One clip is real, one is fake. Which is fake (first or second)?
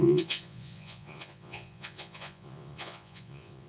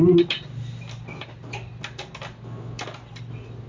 first